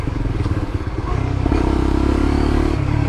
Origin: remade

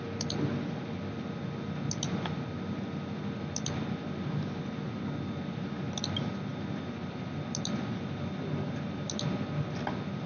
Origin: recorded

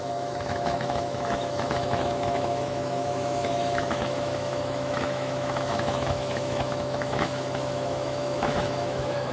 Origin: remade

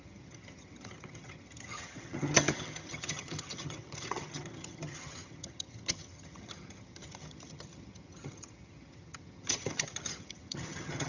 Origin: remade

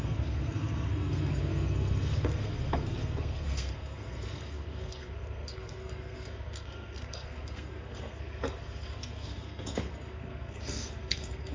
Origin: remade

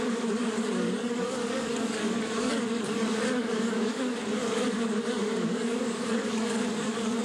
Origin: remade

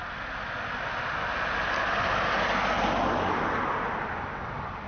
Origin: recorded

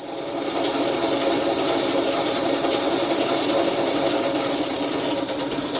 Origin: remade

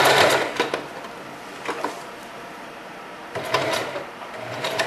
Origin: recorded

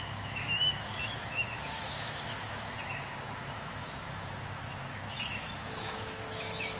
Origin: remade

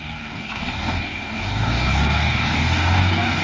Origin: remade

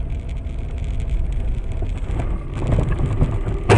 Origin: recorded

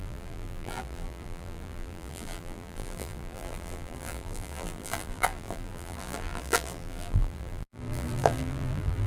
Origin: remade